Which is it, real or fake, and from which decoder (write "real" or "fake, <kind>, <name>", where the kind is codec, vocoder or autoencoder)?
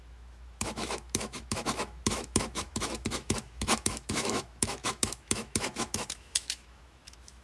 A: fake, autoencoder, DAC-VAE